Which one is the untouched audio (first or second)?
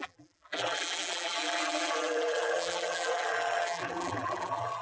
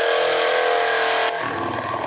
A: second